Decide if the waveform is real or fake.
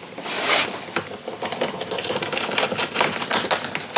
real